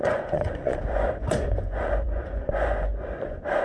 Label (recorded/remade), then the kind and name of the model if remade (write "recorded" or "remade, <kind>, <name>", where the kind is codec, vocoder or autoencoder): remade, vocoder, Vocos